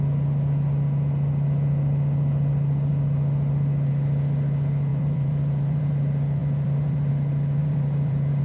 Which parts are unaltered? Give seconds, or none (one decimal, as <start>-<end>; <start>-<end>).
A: 0.0-4.9; 5.9-6.4; 7.1-7.6